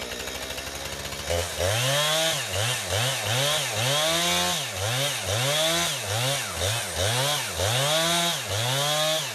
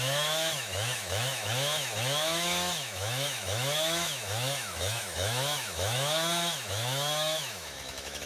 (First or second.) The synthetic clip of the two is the second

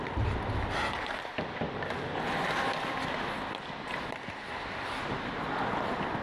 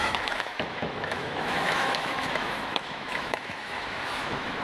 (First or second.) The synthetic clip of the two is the second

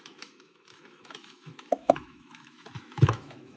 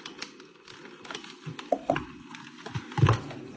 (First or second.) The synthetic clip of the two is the first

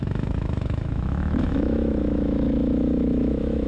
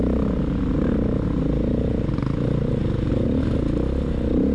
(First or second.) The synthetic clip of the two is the first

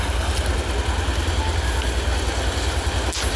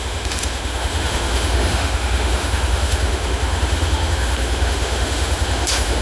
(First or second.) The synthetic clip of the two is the second